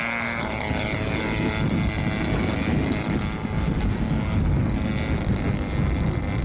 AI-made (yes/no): no